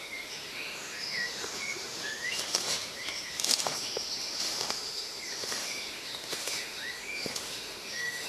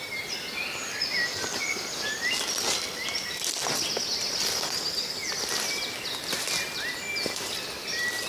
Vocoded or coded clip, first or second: first